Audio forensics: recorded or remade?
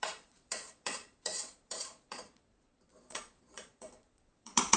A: remade